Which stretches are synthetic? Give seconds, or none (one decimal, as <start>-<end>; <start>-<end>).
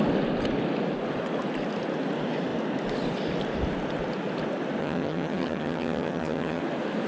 4.8-6.6